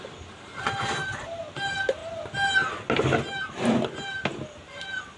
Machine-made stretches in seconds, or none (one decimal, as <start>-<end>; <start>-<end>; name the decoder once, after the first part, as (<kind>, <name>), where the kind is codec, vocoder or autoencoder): 0.5-1.4 (vocoder, BigVGAN v2)